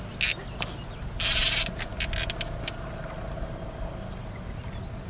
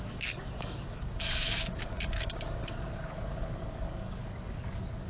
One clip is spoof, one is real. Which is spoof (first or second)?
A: second